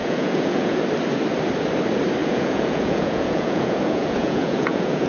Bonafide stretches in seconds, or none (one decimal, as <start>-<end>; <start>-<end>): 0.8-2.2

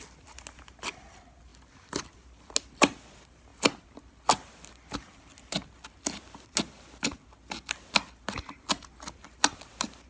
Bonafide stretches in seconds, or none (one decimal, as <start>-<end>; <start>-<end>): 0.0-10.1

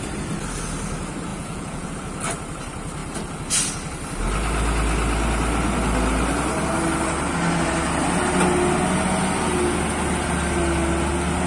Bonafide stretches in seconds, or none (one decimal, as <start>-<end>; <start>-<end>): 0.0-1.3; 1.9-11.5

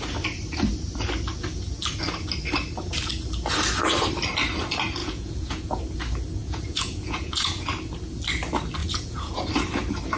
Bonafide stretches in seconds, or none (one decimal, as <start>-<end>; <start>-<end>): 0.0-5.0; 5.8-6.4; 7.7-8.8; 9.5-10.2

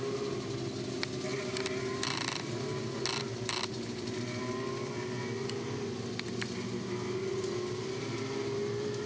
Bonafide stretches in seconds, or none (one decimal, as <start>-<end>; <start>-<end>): 0.0-9.1

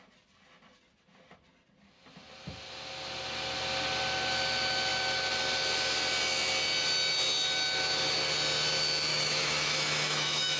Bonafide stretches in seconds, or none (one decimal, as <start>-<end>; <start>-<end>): 0.0-9.1

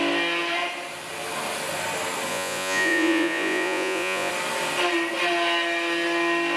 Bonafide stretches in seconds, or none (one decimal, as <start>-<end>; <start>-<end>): 0.0-2.3; 4.3-6.6